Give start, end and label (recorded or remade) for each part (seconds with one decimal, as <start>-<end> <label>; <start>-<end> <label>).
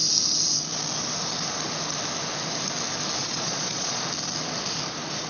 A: 0.0-3.2 recorded; 3.2-4.0 remade; 4.0-5.3 recorded